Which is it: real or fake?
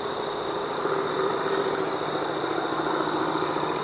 fake